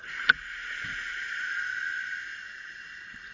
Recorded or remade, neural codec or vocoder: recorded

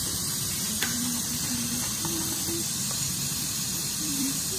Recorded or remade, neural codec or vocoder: remade, vocoder, BigVGAN v2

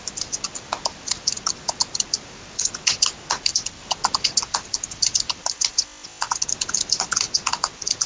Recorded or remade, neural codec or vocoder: remade, vocoder, BigVGAN v2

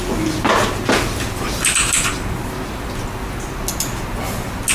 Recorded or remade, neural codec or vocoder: recorded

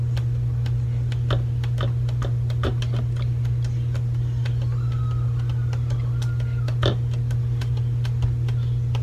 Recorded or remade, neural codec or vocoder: recorded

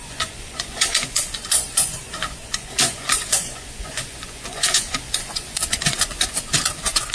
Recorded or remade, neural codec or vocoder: remade, vocoder, Vocos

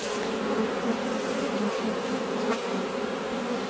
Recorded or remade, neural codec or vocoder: recorded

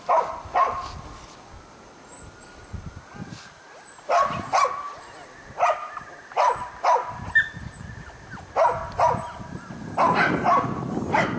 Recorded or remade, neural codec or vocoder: recorded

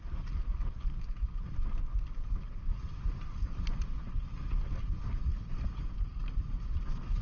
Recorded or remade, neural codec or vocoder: recorded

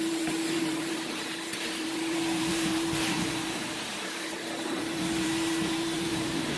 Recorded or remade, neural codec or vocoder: remade, vocoder, BigVGAN v2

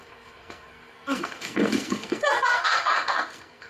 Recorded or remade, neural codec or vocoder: remade, codec, SNAC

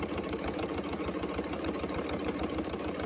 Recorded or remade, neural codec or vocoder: remade, vocoder, BigVGAN v2